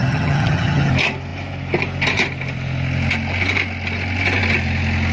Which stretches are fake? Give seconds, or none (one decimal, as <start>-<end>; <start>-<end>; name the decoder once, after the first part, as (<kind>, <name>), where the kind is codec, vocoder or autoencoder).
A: 0.0-0.9 (vocoder, HiFi-GAN)